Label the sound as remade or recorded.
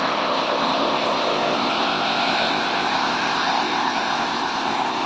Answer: remade